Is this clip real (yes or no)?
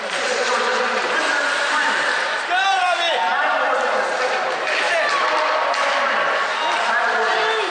yes